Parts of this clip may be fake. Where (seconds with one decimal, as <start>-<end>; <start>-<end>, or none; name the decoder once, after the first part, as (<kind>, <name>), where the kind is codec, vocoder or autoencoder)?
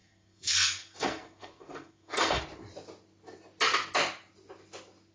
0.0-2.4 (codec, SNAC)